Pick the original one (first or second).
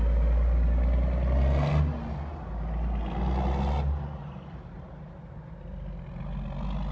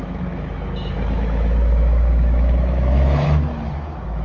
first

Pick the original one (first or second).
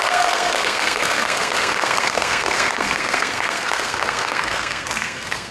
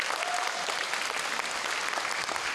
second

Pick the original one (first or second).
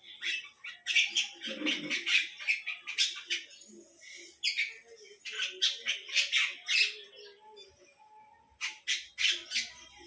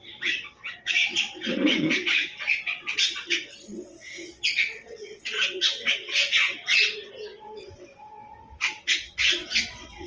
first